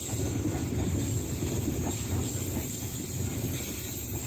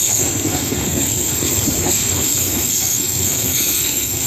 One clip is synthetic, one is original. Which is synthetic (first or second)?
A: second